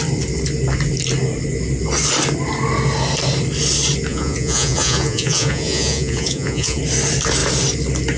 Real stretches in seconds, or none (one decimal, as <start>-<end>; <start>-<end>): 0.0-4.1; 6.8-8.2

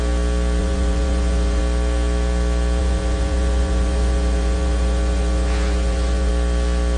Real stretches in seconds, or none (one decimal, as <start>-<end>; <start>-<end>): 0.0-0.6; 1.6-2.8; 6.3-7.0

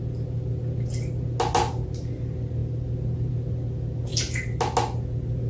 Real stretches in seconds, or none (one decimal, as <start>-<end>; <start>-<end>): 0.0-5.5